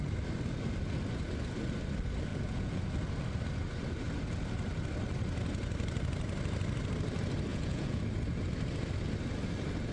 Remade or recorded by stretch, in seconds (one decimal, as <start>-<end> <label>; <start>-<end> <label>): 0.0-2.3 recorded; 2.3-2.8 remade; 2.8-7.5 recorded; 7.5-8.0 remade; 8.0-9.9 recorded